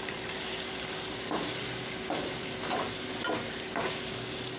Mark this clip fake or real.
real